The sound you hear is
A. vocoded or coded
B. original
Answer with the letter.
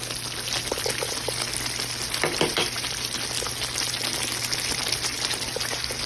B